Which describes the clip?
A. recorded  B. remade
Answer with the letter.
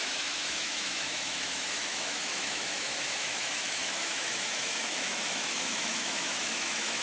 B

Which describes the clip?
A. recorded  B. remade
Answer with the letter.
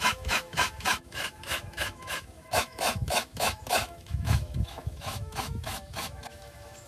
B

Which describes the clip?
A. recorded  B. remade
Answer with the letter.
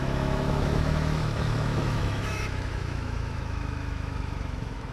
B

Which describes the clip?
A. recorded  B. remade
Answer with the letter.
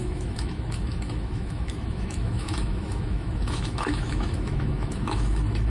B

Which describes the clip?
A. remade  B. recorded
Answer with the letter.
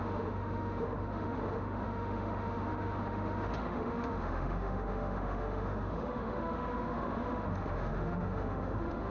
A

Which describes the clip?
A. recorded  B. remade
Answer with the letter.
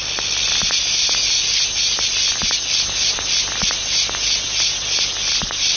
A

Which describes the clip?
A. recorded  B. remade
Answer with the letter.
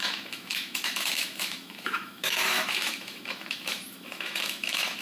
B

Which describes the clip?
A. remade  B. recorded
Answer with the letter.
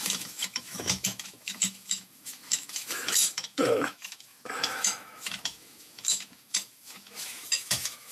A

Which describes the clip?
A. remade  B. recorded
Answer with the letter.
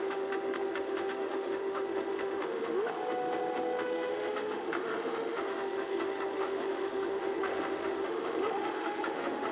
A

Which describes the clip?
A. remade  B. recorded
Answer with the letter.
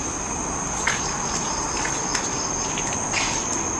B